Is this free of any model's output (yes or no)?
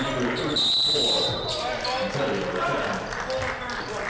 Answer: yes